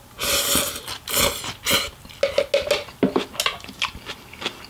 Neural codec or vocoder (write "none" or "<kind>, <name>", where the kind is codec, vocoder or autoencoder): none